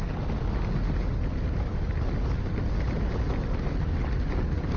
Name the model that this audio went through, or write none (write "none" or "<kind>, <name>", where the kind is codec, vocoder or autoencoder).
none